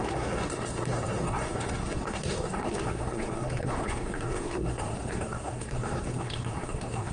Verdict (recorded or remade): remade